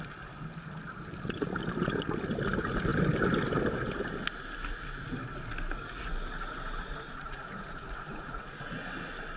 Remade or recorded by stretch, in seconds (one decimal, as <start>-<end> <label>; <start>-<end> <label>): 0.0-6.8 recorded; 6.8-8.7 remade; 8.7-9.4 recorded